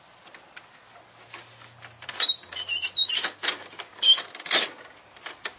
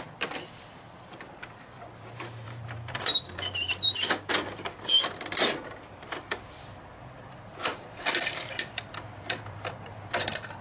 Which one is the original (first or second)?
first